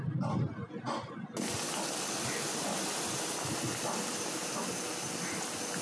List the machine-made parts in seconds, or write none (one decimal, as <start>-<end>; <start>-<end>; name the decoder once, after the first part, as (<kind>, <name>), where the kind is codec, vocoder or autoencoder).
none